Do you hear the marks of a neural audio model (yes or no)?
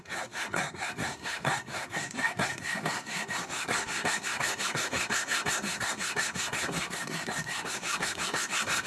yes